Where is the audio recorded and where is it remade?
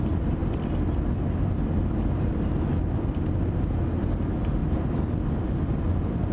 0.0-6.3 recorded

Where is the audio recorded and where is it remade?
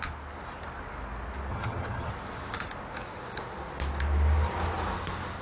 0.0-1.5 recorded; 1.5-2.1 remade; 2.1-5.4 recorded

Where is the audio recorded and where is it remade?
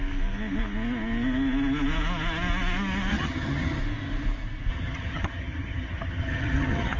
0.0-3.1 recorded; 3.1-3.8 remade; 3.8-4.7 recorded; 4.7-7.0 remade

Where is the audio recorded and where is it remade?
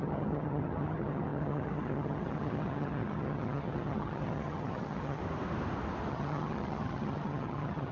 0.0-5.2 remade; 5.2-6.1 recorded; 6.1-7.9 remade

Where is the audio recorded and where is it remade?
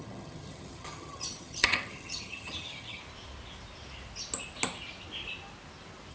0.0-3.0 remade; 3.0-6.1 recorded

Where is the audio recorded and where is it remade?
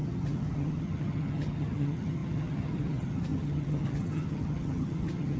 0.0-5.4 remade